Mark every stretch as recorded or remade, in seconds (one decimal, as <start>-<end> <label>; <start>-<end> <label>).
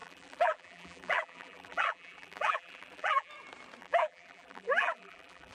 0.0-3.3 remade; 3.3-3.8 recorded; 3.8-5.5 remade